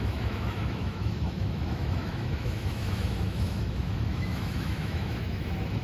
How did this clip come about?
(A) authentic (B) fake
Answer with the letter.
B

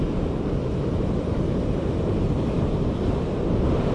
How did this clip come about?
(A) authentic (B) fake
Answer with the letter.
A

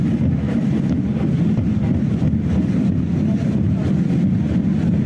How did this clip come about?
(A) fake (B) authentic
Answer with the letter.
B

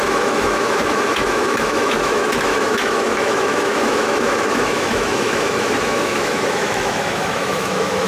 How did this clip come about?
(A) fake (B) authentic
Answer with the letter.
A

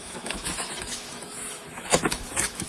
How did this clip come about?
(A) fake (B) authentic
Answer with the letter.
A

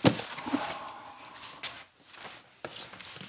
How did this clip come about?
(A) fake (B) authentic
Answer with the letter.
B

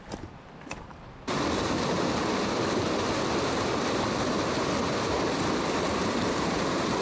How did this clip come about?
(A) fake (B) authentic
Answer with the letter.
B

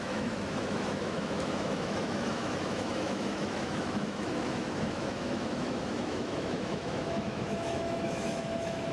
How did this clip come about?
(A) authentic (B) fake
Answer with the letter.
B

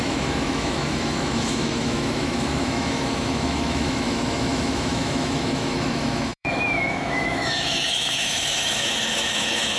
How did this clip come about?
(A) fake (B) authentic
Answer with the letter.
A